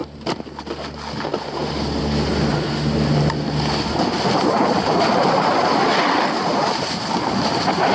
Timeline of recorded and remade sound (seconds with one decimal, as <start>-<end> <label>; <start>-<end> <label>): 0.0-7.9 recorded